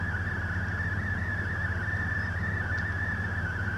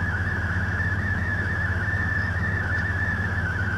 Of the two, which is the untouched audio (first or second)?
first